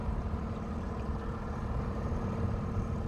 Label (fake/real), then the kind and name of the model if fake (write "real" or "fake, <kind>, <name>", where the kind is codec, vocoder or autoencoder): fake, vocoder, BigVGAN v2